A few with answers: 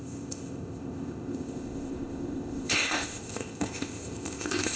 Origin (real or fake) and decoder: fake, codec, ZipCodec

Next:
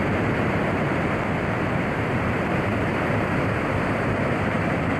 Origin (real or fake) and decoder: fake, vocoder, BigVGAN v2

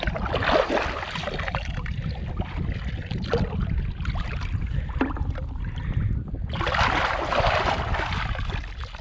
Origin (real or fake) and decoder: real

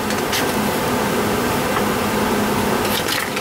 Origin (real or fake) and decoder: real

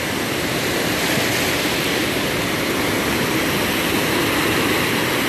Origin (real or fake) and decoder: real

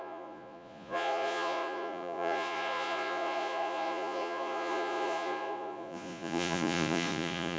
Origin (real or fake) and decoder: fake, vocoder, Vocos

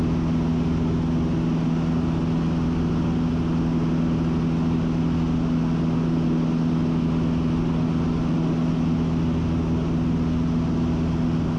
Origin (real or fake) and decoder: real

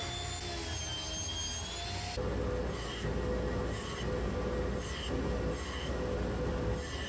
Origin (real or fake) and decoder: real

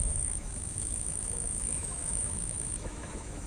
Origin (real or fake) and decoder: fake, autoencoder, DAC-VAE